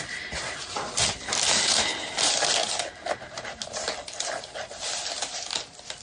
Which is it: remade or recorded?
recorded